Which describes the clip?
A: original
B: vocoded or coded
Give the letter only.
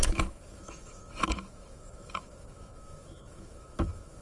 B